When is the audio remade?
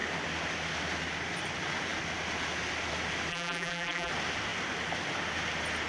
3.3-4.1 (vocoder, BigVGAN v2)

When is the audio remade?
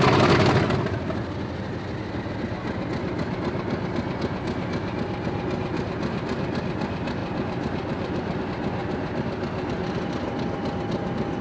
none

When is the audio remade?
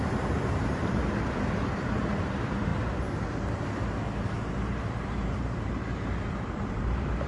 0.0-2.7 (vocoder, BigVGAN v2); 4.5-7.3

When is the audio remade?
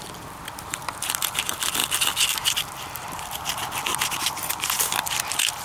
0.0-1.8 (vocoder, BigVGAN v2); 4.2-5.6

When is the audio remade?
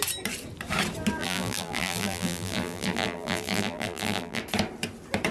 1.2-4.4 (vocoder, BigVGAN v2)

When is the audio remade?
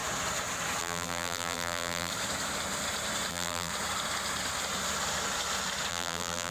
0.8-2.1 (vocoder, BigVGAN v2); 3.3-3.7; 5.9-6.5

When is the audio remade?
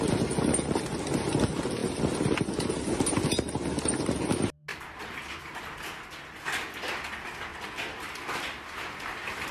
1.8-2.5 (vocoder, BigVGAN v2); 4.7-5.4; 7.5-8.7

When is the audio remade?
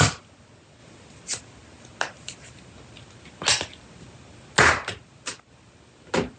none